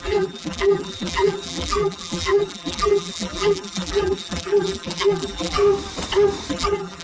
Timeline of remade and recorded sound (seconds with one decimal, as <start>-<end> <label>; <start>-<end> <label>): 0.0-5.6 remade; 5.6-6.5 recorded; 6.5-7.0 remade